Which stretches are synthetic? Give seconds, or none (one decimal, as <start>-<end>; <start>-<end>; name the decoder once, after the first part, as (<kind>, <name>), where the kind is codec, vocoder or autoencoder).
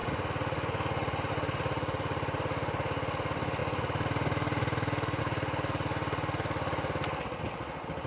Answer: none